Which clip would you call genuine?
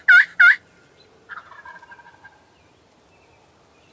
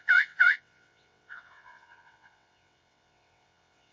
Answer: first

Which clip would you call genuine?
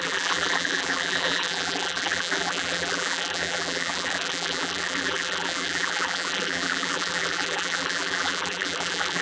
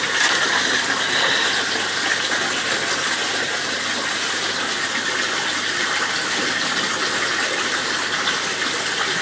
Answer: second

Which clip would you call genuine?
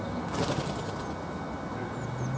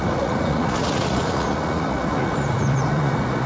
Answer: first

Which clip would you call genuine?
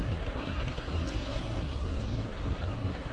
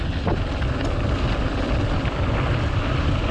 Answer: second